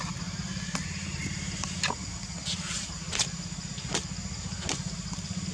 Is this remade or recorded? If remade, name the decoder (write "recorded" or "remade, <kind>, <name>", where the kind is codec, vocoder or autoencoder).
recorded